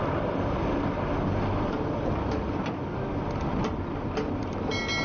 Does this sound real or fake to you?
real